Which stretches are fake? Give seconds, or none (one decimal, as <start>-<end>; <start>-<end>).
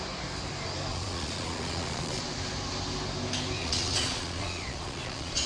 0.9-2.2; 3.6-5.5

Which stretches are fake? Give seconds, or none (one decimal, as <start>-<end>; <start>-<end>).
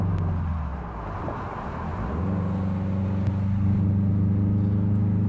none